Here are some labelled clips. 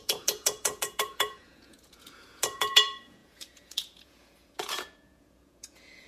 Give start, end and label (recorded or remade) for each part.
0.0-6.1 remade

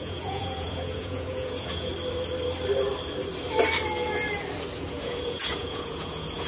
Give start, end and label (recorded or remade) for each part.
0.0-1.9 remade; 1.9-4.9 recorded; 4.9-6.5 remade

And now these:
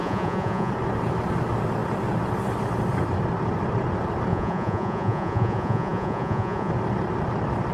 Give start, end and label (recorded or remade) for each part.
0.0-0.7 remade; 0.7-4.3 recorded; 4.3-6.7 remade; 6.7-7.7 recorded

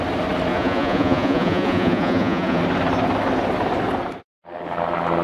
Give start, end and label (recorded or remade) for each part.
0.0-0.5 recorded; 0.5-2.6 remade; 2.6-5.2 recorded

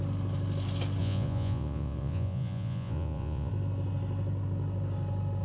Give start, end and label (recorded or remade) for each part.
0.0-1.0 recorded; 1.0-3.5 remade; 3.5-5.4 recorded